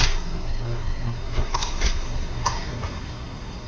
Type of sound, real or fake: fake